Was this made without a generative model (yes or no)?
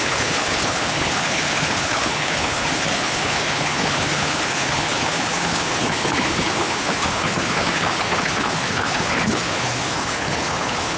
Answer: no